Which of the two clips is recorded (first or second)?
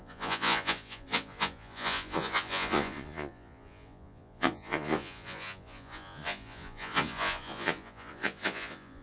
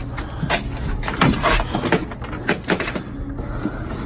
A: second